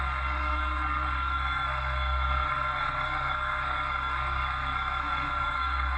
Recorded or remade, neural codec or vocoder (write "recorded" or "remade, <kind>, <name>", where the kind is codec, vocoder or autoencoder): remade, codec, SNAC